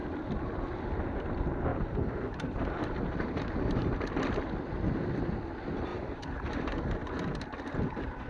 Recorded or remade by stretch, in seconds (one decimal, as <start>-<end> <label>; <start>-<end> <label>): 0.0-1.7 recorded; 1.7-3.9 remade; 3.9-5.9 recorded; 5.9-6.5 remade; 6.5-8.3 recorded